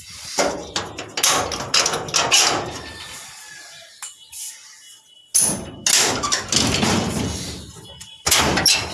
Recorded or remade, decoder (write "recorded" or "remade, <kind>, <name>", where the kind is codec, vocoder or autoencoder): recorded